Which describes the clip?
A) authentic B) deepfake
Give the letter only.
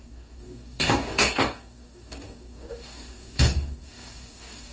B